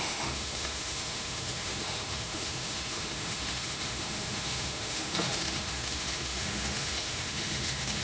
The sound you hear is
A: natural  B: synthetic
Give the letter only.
B